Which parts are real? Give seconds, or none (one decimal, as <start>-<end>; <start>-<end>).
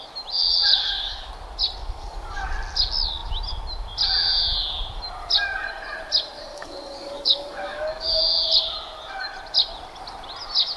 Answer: 0.0-0.7; 1.3-1.8; 2.4-6.5; 8.2-10.8